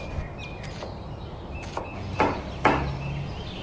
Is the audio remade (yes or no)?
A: no